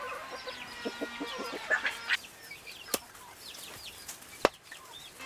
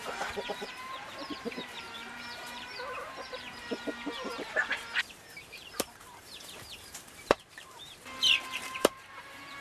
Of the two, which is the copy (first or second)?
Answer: second